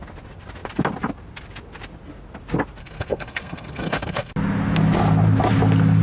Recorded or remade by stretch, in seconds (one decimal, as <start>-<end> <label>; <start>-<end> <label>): 0.0-2.8 recorded; 2.8-4.3 remade; 4.3-6.0 recorded